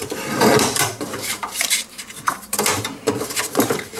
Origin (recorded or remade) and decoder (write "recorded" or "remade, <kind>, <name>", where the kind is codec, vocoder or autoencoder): remade, vocoder, BigVGAN v2